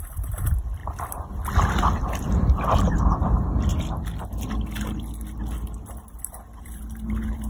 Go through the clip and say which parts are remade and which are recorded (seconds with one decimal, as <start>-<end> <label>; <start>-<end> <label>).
0.0-0.8 remade; 0.8-3.1 recorded; 3.1-3.7 remade; 3.7-6.6 recorded; 6.6-7.5 remade